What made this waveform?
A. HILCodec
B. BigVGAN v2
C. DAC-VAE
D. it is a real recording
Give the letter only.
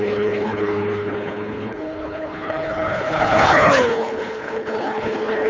A